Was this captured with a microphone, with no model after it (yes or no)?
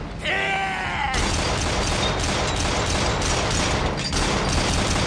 yes